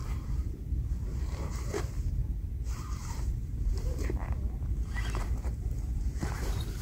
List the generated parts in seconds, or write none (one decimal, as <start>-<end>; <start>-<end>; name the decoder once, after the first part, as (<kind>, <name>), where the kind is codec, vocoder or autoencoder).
0.0-1.5 (vocoder, BigVGAN v2); 2.2-4.3

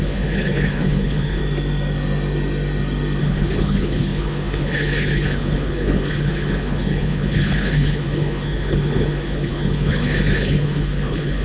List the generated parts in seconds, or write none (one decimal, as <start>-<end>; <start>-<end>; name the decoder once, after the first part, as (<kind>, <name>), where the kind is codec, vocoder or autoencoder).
0.0-1.4 (codec, HILCodec); 3.2-11.4

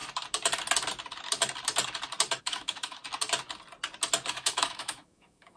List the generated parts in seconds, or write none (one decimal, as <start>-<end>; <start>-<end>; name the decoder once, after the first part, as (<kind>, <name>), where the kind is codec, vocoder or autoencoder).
2.4-3.0 (autoencoder, DAC-VAE); 4.3-5.6